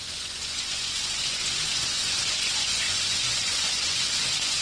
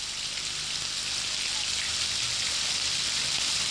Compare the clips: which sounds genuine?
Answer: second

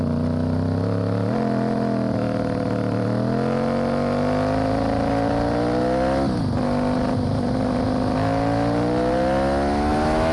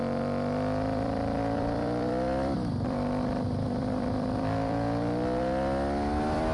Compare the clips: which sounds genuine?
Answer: first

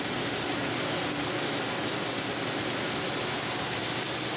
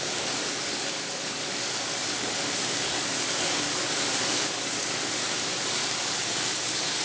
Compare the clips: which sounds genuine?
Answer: first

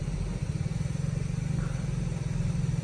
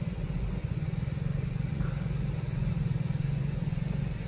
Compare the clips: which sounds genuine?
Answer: first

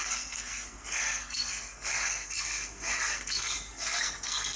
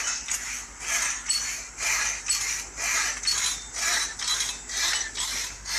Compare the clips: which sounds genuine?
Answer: second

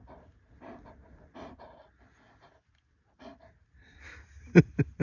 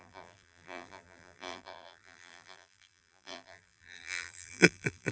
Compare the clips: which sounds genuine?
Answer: first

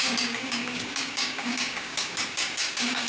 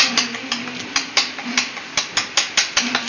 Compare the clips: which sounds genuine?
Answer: second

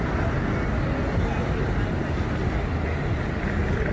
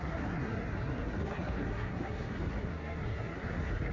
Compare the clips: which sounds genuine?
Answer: first